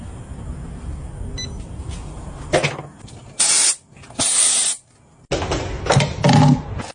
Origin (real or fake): real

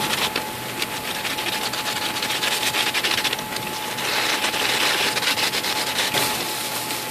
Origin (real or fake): real